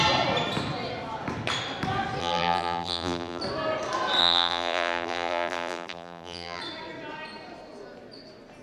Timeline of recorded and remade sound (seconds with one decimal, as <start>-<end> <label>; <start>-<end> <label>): 0.0-2.2 recorded; 2.2-3.4 remade; 3.4-4.2 recorded; 4.2-6.6 remade; 6.6-8.6 recorded